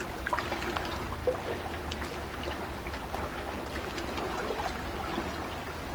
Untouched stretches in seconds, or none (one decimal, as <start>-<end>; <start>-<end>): 0.0-5.9